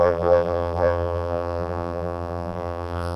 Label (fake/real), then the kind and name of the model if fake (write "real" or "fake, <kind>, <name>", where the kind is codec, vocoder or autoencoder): fake, vocoder, BigVGAN v2